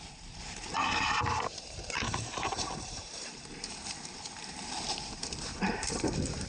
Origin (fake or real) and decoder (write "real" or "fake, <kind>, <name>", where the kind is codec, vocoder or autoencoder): fake, vocoder, BigVGAN v2